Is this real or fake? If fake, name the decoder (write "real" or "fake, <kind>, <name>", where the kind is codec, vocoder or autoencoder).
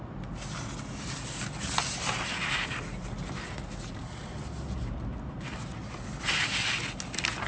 real